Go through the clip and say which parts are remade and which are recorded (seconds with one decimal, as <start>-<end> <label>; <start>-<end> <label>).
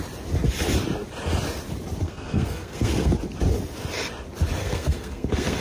0.0-2.0 recorded; 2.0-3.1 remade; 3.1-4.6 recorded; 4.6-5.6 remade